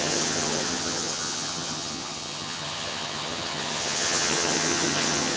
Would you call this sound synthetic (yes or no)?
yes